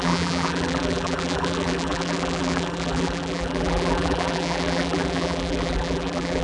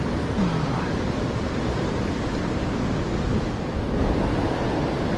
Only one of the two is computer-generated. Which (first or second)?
first